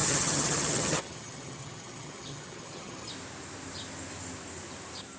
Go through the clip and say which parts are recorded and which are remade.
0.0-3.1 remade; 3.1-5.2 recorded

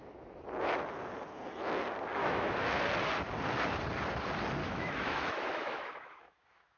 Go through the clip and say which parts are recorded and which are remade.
0.0-2.2 recorded; 2.2-2.8 remade; 2.8-4.6 recorded; 4.6-6.8 remade

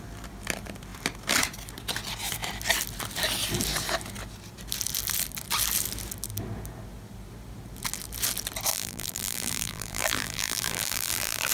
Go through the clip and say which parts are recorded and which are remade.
0.0-8.7 recorded; 8.7-11.5 remade

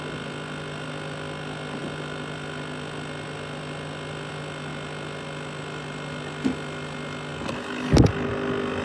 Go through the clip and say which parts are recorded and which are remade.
0.0-8.8 recorded

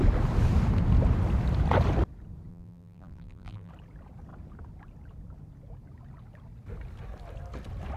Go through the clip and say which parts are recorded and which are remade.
0.0-2.5 recorded; 2.5-3.7 remade; 3.7-8.0 recorded